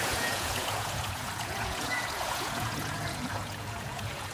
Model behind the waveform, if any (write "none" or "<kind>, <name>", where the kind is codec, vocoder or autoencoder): vocoder, Vocos